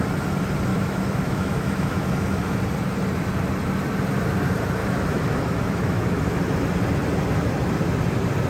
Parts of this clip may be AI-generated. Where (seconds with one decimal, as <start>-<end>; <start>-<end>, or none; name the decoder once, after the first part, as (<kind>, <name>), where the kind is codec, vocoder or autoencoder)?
0.7-2.6 (autoencoder, DAC-VAE); 4.8-6.1